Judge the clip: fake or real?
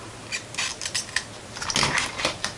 real